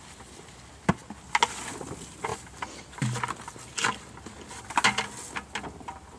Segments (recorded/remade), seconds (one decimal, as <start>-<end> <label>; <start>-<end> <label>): 0.0-6.2 recorded

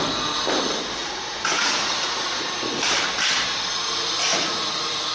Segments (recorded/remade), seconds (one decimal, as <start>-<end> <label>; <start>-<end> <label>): 0.0-1.0 recorded; 1.0-2.8 remade; 2.8-4.3 recorded; 4.3-5.1 remade

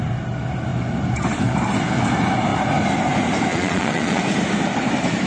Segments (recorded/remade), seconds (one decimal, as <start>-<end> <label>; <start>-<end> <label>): 0.0-3.5 recorded; 3.5-4.2 remade; 4.2-5.3 recorded

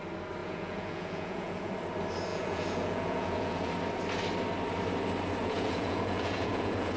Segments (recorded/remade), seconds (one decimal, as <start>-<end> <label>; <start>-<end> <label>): 0.0-0.4 recorded; 0.4-1.7 remade; 1.7-2.3 recorded; 2.3-3.7 remade; 3.7-5.4 recorded; 5.4-7.0 remade

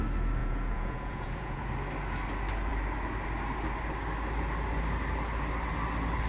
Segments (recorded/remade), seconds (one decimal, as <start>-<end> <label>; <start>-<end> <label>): 0.0-0.4 recorded; 0.4-1.7 remade; 1.7-6.3 recorded

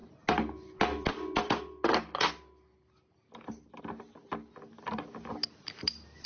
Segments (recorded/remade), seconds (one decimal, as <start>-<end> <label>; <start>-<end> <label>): 0.0-6.3 recorded